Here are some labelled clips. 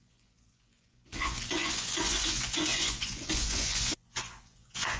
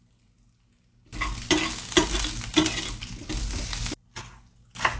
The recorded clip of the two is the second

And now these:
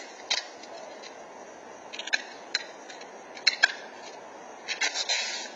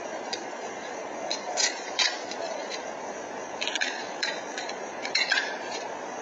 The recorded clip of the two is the first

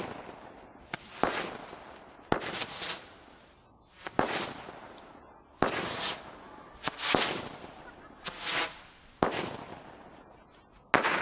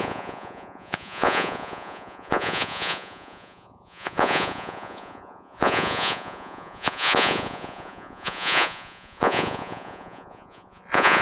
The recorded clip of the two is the first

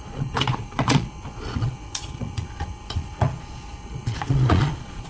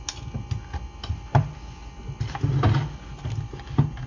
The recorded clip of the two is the second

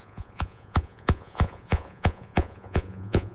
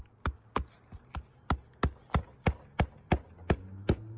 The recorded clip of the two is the second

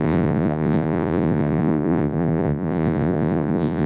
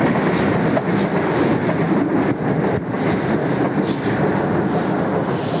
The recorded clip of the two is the second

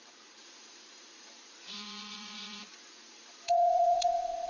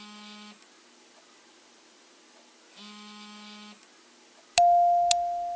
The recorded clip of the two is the second